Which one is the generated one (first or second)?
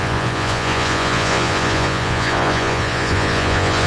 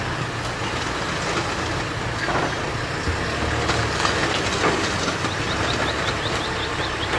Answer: first